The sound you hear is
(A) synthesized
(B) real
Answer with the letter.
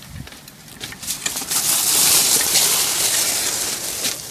B